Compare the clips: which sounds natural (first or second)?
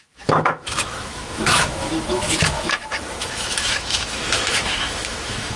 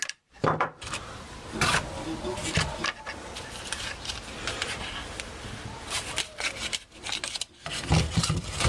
second